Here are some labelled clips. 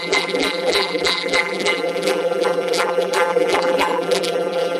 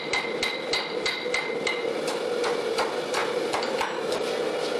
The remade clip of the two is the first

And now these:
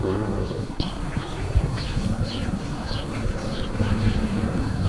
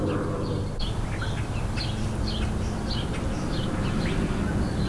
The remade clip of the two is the first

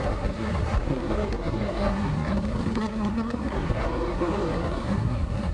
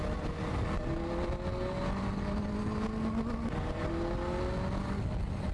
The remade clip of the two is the first